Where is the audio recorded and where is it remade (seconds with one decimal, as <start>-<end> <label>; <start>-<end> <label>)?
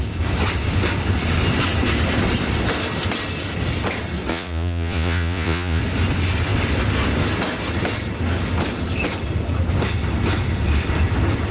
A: 0.0-4.3 recorded; 4.3-5.8 remade; 5.8-11.5 recorded